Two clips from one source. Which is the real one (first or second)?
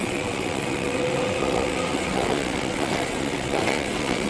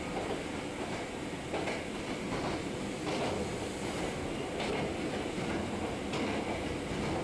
second